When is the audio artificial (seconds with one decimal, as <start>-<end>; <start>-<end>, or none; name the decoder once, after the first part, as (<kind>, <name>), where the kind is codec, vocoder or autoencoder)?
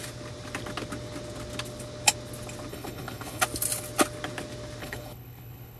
2.7-3.4 (codec, HILCodec); 4.8-5.8